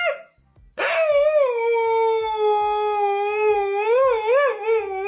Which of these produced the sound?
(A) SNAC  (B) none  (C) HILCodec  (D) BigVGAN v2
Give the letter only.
B